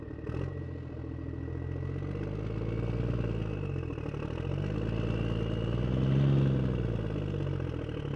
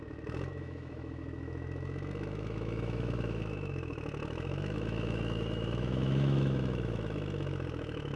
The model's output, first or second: second